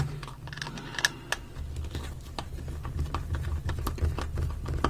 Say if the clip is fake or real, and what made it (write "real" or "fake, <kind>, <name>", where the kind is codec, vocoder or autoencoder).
real